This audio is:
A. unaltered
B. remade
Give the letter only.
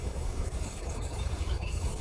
B